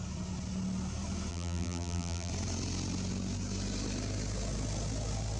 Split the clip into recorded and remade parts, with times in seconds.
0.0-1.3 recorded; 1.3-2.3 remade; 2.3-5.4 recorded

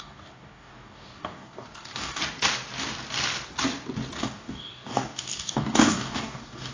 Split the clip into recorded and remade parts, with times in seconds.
0.0-2.2 remade; 2.2-4.2 recorded; 4.2-6.7 remade